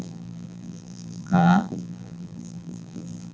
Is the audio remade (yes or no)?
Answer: yes